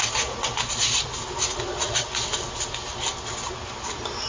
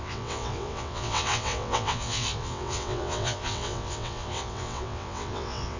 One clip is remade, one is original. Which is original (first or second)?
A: first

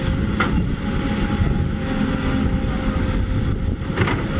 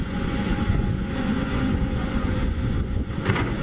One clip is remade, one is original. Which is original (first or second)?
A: first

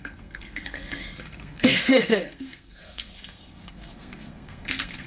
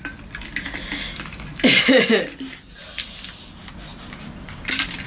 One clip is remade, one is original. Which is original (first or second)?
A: second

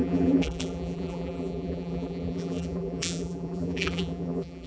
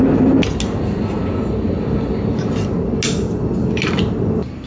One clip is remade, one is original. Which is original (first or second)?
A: second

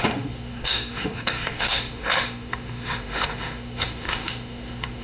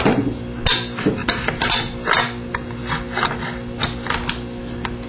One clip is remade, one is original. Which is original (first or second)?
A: second